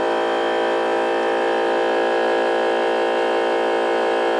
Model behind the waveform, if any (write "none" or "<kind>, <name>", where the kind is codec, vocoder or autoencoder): none